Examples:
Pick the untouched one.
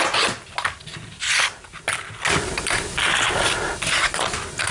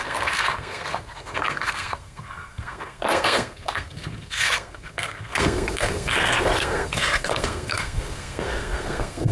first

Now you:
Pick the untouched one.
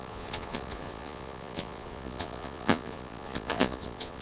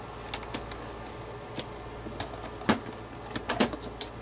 second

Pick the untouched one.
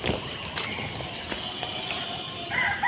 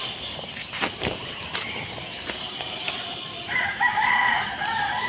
first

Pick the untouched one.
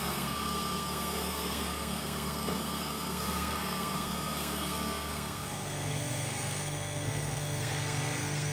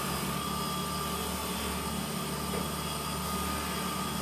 second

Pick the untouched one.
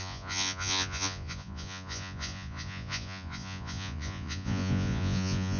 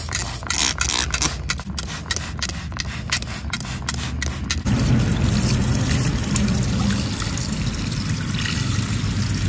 second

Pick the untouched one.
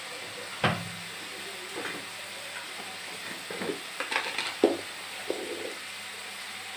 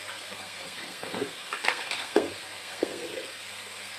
first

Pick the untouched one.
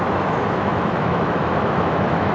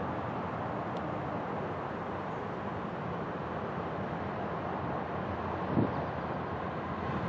second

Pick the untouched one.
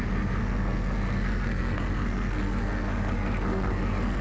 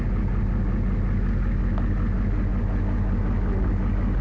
second